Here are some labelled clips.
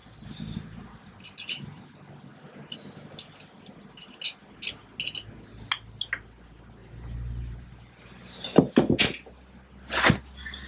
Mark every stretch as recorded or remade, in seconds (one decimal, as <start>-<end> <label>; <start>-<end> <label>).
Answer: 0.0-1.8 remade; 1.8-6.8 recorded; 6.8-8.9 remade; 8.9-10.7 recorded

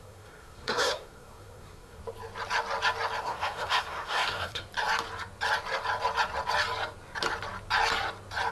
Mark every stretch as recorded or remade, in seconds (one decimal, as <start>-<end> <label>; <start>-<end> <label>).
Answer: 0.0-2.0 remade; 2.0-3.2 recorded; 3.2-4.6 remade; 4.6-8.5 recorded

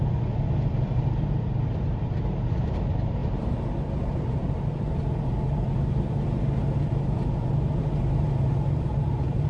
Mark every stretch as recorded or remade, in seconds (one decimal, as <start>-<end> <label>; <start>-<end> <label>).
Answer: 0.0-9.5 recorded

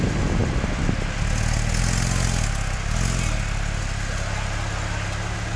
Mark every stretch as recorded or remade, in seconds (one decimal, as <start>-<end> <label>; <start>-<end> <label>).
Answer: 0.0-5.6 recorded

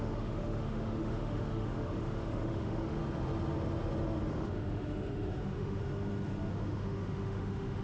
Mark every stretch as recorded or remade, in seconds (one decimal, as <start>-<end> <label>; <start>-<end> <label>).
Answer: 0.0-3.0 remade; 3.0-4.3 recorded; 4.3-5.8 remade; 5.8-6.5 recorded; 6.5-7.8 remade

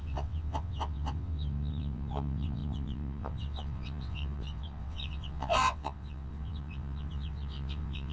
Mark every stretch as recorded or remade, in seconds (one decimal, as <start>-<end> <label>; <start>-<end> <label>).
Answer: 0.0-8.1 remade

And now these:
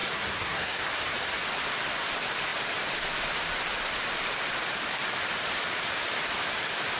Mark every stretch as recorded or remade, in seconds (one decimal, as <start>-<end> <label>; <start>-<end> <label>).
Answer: 0.0-0.9 remade; 0.9-7.0 recorded